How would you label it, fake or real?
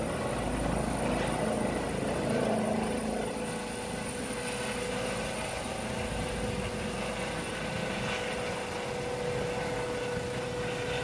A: real